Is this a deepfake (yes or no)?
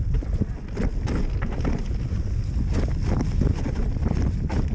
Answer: no